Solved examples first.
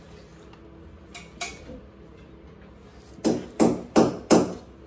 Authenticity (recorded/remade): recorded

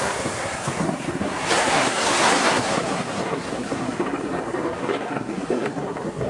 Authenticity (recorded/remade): remade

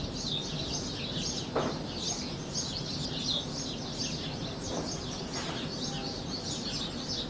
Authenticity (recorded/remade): recorded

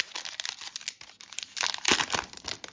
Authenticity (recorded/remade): recorded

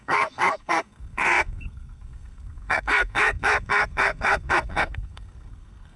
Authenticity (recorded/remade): remade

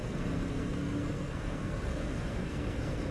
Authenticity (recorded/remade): remade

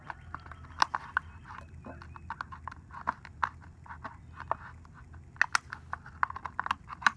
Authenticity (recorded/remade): recorded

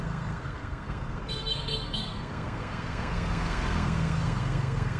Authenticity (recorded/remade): remade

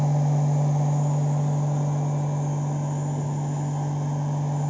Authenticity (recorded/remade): recorded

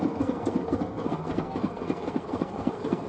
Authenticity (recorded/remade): remade